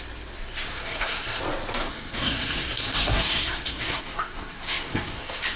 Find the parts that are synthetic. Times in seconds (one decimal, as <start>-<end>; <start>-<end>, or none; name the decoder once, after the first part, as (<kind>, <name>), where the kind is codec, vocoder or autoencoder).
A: 0.7-1.4 (codec, SNAC); 1.8-5.6